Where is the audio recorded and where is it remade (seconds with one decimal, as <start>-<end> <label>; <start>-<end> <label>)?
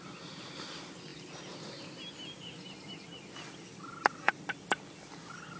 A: 0.0-5.6 recorded